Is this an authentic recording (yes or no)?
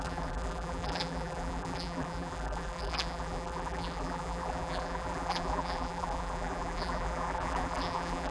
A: no